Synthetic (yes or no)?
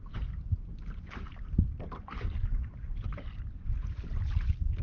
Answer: yes